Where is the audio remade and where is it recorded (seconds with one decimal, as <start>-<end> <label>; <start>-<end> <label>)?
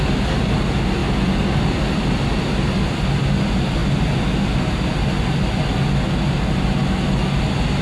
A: 0.0-7.8 recorded